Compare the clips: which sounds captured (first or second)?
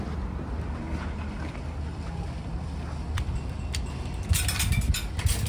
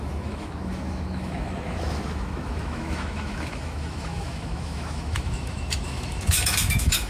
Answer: first